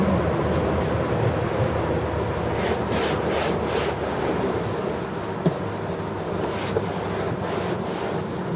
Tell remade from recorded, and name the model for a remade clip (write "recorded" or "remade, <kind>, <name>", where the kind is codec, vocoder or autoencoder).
recorded